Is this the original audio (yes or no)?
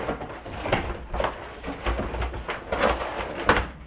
yes